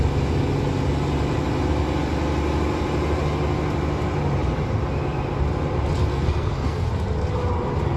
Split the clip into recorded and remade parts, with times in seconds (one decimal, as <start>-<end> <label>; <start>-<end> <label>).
0.0-6.1 recorded; 6.1-6.9 remade; 6.9-8.0 recorded